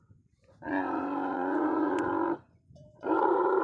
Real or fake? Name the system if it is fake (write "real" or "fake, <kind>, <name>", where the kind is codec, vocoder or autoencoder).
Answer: fake, vocoder, Vocos